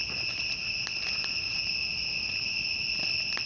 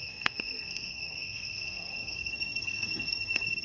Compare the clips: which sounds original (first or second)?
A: first